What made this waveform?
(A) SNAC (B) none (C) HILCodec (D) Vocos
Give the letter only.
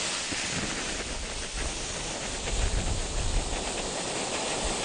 B